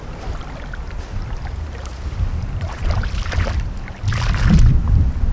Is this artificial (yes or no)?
no